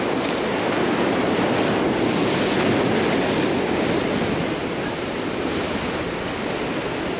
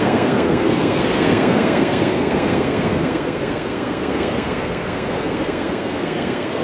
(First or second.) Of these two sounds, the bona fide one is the first